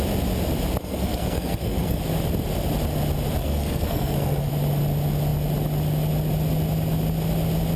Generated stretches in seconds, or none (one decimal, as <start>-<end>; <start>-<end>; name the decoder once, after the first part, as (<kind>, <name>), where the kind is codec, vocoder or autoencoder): 0.8-2.0 (codec, SNAC); 3.4-4.5